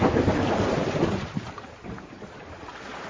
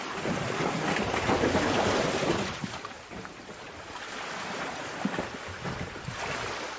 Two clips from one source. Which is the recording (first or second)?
first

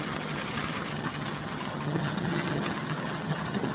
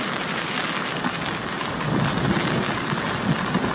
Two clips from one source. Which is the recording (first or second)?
second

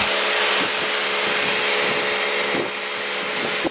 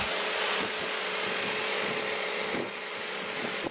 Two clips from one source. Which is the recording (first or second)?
first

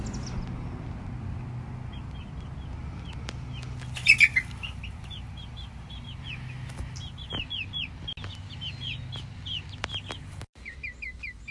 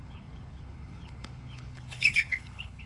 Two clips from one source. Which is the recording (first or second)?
first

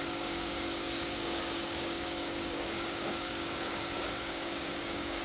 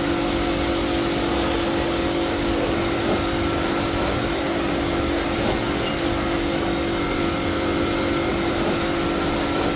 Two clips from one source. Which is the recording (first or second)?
second